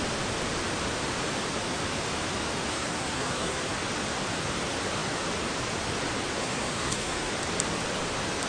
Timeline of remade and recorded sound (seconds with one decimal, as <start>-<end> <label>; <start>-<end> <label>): 0.0-2.7 recorded; 2.7-3.6 remade; 3.6-6.4 recorded; 6.4-7.3 remade; 7.3-8.5 recorded